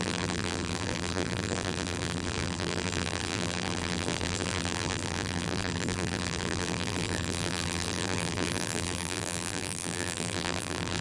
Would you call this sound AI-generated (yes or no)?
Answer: yes